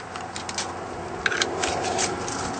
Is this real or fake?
real